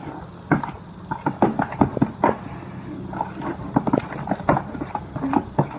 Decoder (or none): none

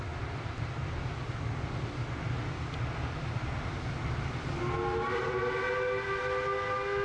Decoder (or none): none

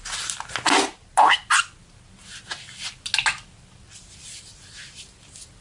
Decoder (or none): none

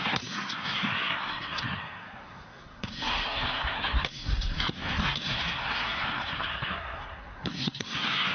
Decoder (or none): codec, SNAC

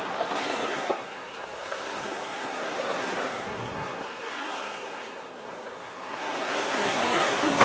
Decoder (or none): codec, SNAC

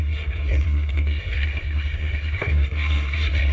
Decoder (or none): codec, SNAC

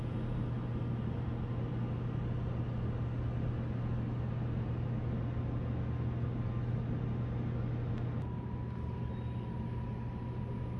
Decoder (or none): none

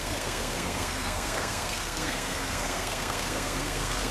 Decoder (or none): codec, SNAC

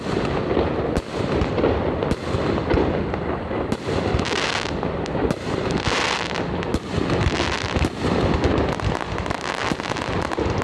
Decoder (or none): none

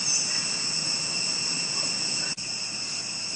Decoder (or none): none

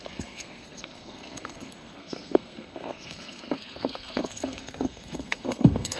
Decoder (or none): codec, SNAC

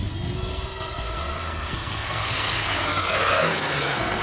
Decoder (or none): codec, SNAC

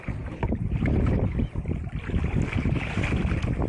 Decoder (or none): none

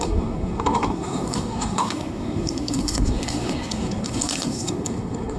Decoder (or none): codec, SNAC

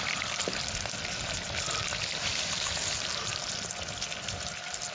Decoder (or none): none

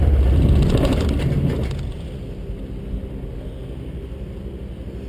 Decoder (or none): none